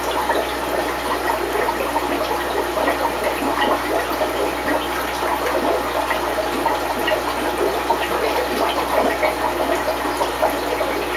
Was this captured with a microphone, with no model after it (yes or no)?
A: yes